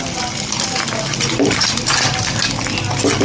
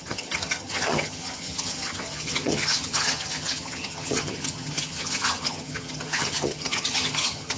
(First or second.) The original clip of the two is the first